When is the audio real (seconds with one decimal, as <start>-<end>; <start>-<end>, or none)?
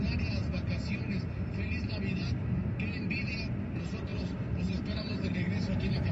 0.0-4.1